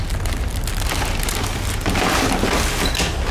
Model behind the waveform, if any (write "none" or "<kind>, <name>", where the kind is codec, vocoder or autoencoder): none